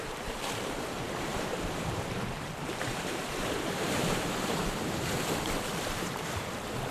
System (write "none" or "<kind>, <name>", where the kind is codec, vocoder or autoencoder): vocoder, BigVGAN v2